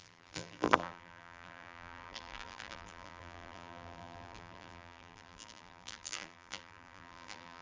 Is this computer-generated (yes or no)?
yes